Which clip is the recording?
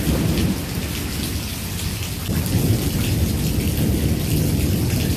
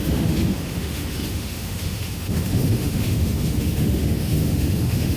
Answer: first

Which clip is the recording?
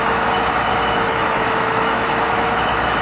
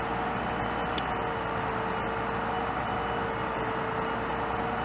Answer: second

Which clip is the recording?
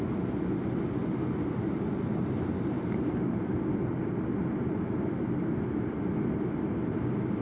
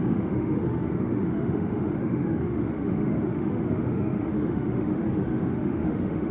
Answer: first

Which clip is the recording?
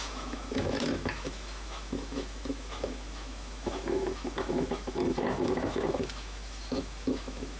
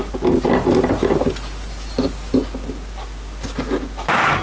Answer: second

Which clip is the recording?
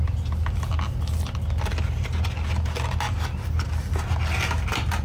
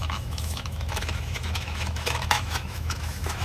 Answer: first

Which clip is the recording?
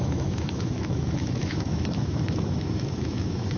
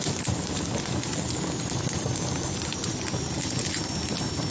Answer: second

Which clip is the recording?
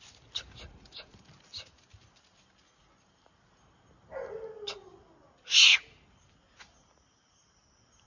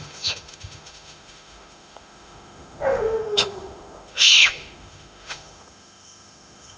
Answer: first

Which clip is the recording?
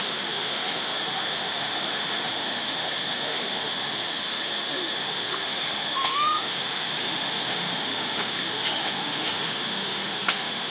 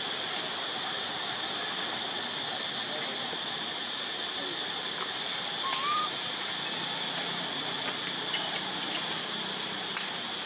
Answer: second